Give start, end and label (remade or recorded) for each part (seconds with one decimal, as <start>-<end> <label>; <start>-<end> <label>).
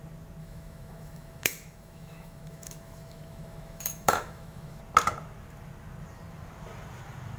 0.0-0.4 recorded; 0.4-4.8 remade; 4.8-7.4 recorded